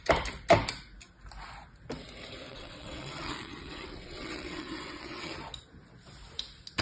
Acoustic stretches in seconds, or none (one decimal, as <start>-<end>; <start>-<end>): 0.0-2.5; 5.3-6.8